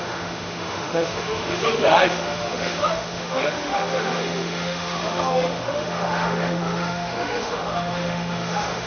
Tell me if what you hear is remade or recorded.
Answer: remade